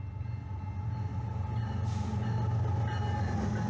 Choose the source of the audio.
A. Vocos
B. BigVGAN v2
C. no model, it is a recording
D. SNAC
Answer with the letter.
C